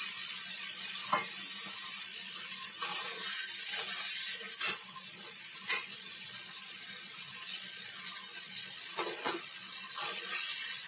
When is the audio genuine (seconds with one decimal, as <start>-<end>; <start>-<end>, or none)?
1.0-2.0; 2.9-4.7